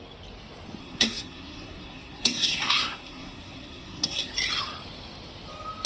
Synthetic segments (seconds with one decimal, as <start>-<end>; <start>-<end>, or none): 0.8-4.3